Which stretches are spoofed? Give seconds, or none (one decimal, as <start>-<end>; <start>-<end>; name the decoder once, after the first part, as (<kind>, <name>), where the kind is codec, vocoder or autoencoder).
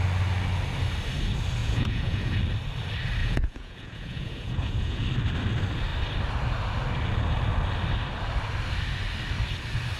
1.6-2.4 (vocoder, Vocos); 3.2-5.0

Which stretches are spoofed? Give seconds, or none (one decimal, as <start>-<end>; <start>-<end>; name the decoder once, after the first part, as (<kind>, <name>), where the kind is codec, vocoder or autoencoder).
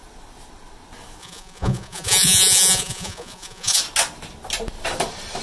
1.2-3.8 (vocoder, Vocos)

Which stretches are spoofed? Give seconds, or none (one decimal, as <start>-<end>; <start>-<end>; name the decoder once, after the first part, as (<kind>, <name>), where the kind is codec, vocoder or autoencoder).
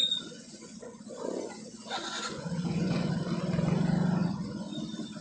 0.0-3.1 (vocoder, Vocos); 4.2-4.8